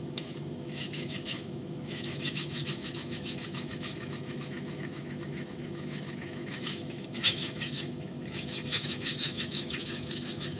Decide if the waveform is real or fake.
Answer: fake